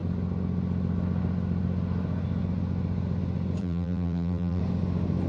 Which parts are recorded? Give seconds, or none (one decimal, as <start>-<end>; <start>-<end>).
0.0-3.6; 4.6-5.3